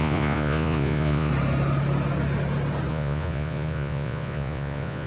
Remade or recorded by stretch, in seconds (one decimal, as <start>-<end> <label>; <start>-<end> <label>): 0.0-1.3 remade; 1.3-2.9 recorded; 2.9-5.1 remade